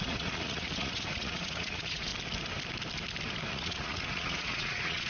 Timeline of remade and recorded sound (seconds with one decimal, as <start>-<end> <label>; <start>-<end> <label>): 0.0-2.1 remade; 2.1-3.5 recorded; 3.5-5.1 remade